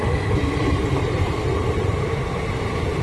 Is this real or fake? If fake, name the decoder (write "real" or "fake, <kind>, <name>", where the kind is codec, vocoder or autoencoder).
real